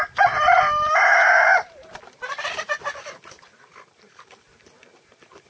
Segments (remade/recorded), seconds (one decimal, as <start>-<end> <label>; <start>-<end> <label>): 0.0-5.5 recorded